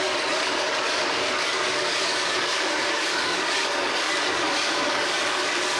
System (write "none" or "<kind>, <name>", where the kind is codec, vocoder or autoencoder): codec, DAC